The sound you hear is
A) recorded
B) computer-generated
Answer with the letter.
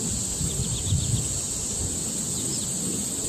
A